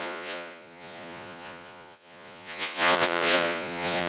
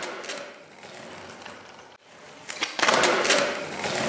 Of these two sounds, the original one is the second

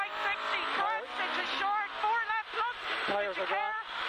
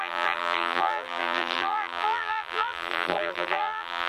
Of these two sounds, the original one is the first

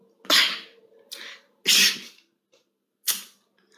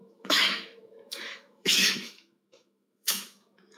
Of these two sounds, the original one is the first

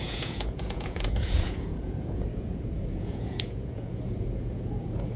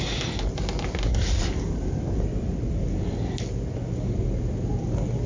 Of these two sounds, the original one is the second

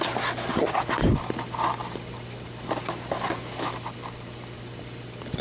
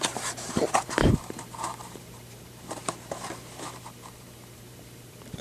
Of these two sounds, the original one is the first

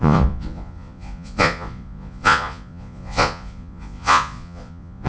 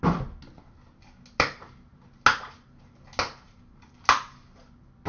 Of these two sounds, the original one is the second